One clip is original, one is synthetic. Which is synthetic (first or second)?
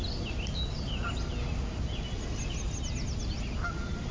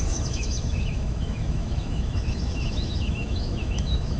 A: second